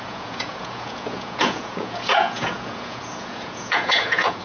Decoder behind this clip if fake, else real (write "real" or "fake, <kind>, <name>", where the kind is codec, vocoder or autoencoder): fake, vocoder, Vocos